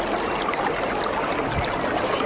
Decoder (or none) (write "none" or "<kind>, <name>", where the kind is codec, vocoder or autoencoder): none